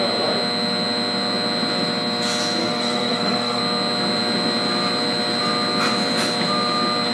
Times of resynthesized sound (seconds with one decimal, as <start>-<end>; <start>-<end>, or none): 2.6-3.6